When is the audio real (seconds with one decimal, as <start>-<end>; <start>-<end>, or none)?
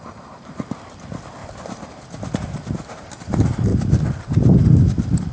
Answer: 0.0-5.3